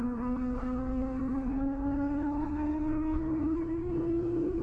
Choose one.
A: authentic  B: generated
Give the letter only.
B